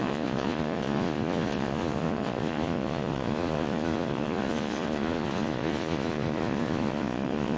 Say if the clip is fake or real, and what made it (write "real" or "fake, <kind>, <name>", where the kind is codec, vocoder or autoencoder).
fake, vocoder, Vocos